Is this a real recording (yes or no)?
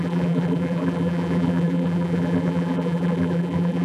no